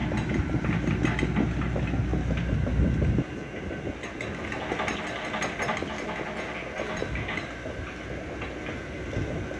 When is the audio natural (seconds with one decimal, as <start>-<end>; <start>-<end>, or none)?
0.0-9.6